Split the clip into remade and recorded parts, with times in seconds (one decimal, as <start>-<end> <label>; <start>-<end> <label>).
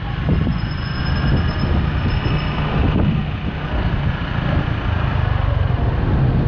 0.0-0.5 recorded; 0.5-1.0 remade; 1.0-6.5 recorded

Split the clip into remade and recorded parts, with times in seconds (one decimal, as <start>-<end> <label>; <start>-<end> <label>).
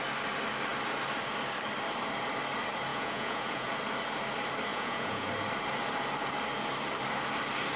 0.0-2.9 recorded; 2.9-3.7 remade; 3.7-4.7 recorded; 4.7-5.3 remade; 5.3-7.8 recorded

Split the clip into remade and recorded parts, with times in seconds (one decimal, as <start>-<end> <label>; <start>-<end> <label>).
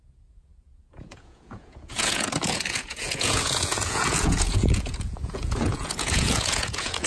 0.0-7.1 remade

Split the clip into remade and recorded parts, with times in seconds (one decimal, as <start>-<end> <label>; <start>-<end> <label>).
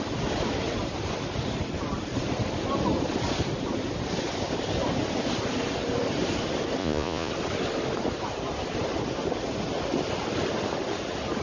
0.0-6.8 recorded; 6.8-7.3 remade; 7.3-11.4 recorded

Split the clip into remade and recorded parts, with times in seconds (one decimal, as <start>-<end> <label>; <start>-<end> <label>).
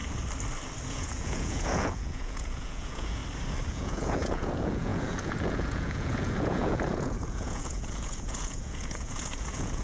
0.0-0.9 recorded; 0.9-3.2 remade; 3.2-3.7 recorded; 3.7-9.8 remade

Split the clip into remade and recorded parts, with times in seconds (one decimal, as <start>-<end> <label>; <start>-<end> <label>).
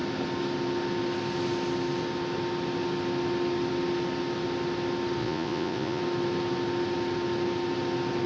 0.0-5.2 recorded; 5.2-6.0 remade; 6.0-8.3 recorded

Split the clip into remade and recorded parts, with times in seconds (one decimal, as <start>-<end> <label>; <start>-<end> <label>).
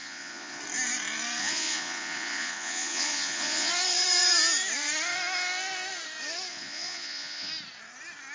0.0-0.6 remade; 0.6-1.4 recorded; 1.4-3.7 remade; 3.7-6.5 recorded; 6.5-7.5 remade; 7.5-8.3 recorded